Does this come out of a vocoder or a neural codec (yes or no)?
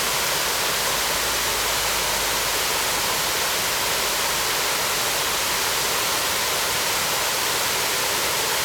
no